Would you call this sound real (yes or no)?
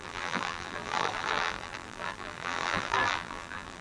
no